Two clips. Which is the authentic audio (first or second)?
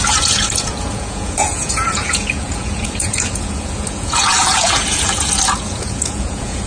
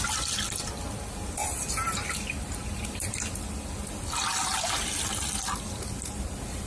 second